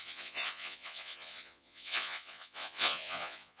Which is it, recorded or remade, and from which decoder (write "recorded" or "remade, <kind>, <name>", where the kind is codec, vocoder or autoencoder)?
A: remade, vocoder, Vocos